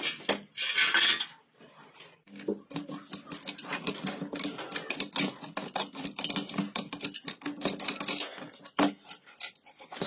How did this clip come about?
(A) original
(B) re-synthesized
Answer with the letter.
A